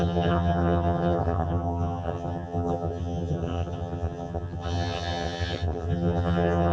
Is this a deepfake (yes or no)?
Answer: yes